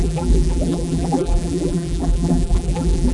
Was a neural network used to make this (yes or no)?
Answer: yes